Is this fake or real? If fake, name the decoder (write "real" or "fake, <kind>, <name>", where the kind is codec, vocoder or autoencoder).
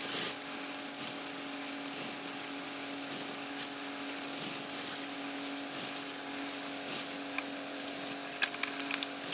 real